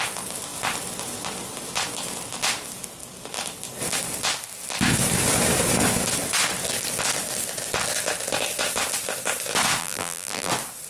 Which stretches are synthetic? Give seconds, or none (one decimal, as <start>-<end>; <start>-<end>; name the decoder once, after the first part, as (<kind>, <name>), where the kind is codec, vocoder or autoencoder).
9.8-10.5 (vocoder, BigVGAN v2)

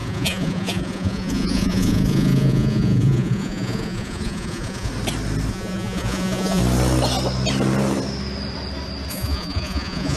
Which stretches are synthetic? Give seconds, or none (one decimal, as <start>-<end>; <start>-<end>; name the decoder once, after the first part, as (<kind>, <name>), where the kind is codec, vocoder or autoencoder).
0.0-4.9 (vocoder, Vocos); 5.5-6.6; 9.1-10.2

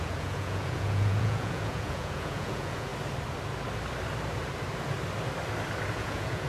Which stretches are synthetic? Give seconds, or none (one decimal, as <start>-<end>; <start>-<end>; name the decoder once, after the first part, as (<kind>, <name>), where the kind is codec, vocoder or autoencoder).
0.0-2.9 (vocoder, Vocos); 5.9-6.5

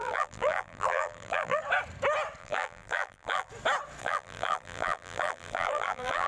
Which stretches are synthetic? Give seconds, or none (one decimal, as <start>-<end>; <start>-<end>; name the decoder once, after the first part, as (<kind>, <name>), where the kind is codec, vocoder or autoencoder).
0.0-1.6 (vocoder, BigVGAN v2); 2.4-3.5; 4.0-6.3

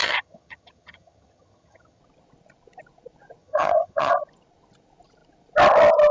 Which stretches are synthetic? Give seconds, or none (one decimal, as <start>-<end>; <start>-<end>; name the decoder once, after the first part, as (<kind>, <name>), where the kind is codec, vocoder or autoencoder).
0.0-2.0 (vocoder, HiFi-GAN); 3.4-4.1